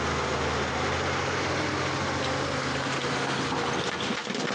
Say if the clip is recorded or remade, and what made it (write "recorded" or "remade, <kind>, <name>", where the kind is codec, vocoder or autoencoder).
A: recorded